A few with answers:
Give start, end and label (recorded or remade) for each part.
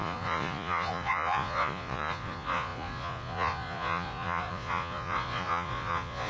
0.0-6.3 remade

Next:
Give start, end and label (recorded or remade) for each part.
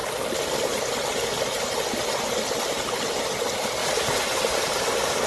0.0-5.3 recorded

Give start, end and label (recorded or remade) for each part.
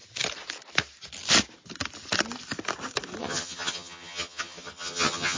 0.0-3.2 recorded; 3.2-5.4 remade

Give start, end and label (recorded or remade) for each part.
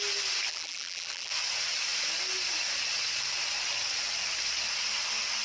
0.0-0.5 recorded; 0.5-1.3 remade; 1.3-5.4 recorded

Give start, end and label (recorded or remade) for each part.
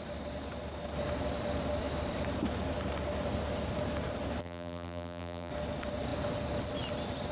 0.0-4.4 recorded; 4.4-5.5 remade; 5.5-7.3 recorded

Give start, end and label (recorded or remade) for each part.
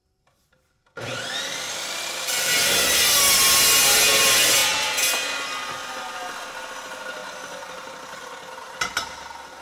0.0-2.5 remade; 2.5-9.6 recorded